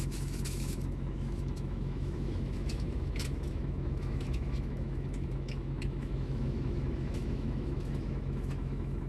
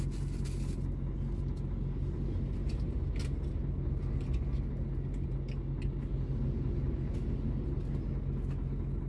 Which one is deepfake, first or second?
first